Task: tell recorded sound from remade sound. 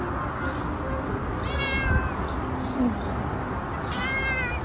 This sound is recorded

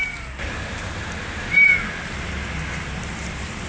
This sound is recorded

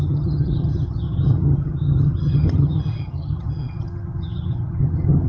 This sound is remade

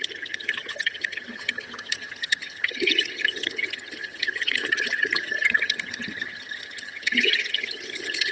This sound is remade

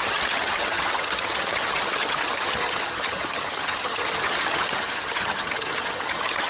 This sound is remade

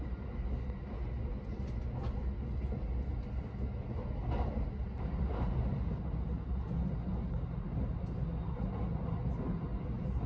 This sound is recorded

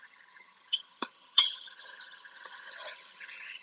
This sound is remade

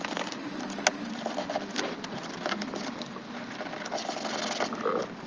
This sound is recorded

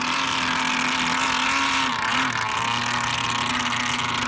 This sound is recorded